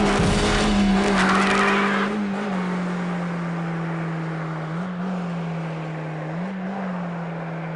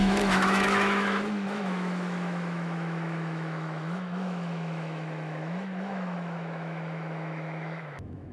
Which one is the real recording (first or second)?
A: first